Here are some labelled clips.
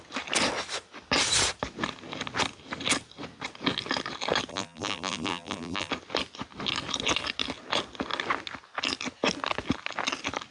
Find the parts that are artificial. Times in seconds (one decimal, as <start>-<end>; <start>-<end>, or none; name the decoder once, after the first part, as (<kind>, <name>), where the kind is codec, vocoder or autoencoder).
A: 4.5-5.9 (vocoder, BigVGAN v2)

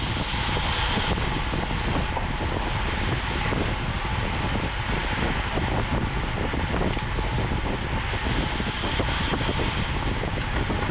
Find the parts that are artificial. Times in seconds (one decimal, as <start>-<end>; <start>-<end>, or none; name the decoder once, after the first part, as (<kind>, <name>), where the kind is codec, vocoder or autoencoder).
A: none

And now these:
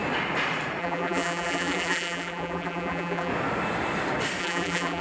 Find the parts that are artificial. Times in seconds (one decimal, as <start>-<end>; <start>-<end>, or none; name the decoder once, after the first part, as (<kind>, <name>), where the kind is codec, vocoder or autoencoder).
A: 0.8-3.3 (vocoder, BigVGAN v2); 4.4-5.0